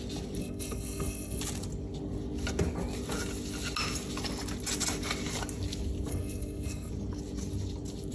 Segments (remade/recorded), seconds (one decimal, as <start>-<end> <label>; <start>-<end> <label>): 0.0-0.4 recorded; 0.4-1.4 remade; 1.4-6.1 recorded; 6.1-6.9 remade; 6.9-8.1 recorded